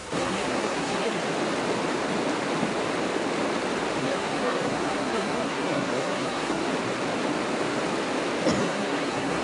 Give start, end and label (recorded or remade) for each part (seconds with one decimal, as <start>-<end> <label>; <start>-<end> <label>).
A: 0.0-1.2 remade; 1.2-4.0 recorded; 4.0-6.6 remade; 6.6-8.6 recorded; 8.6-9.4 remade